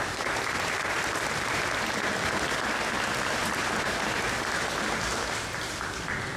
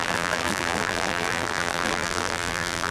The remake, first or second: second